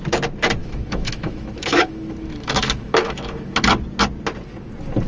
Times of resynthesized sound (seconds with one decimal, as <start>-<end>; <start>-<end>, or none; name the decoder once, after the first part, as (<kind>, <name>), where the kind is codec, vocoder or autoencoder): 0.6-3.7 (autoencoder, DAC-VAE)